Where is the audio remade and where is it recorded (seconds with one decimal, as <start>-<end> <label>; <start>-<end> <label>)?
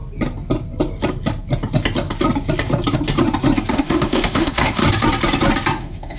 0.0-3.7 recorded; 3.7-4.8 remade; 4.8-5.8 recorded; 5.8-6.2 remade